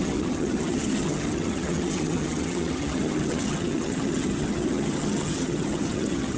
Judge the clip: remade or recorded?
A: remade